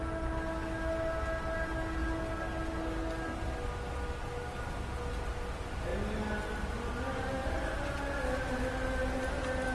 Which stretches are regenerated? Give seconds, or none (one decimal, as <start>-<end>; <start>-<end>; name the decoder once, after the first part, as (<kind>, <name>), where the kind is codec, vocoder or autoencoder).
none